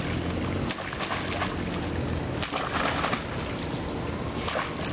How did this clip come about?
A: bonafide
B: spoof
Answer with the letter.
A